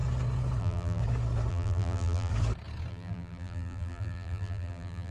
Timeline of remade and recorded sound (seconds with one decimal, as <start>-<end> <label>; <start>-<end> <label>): 0.0-0.6 recorded; 0.6-1.0 remade; 1.0-1.5 recorded; 1.5-2.3 remade; 2.3-2.9 recorded; 2.9-5.1 remade